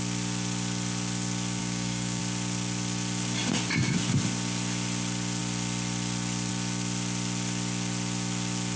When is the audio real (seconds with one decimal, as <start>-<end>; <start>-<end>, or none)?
0.0-1.6; 2.2-8.8